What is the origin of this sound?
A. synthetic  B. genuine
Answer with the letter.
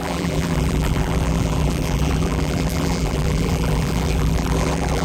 A